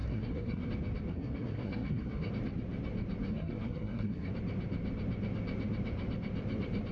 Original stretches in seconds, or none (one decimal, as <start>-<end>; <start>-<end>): 0.7-1.1; 2.3-3.2; 4.3-6.9